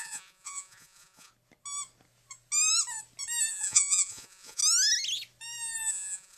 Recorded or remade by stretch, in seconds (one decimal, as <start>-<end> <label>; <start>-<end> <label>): 0.0-1.3 remade; 1.3-3.5 recorded; 3.5-4.6 remade; 4.6-5.9 recorded; 5.9-6.4 remade